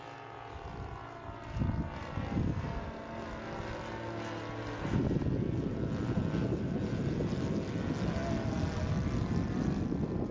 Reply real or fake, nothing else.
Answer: real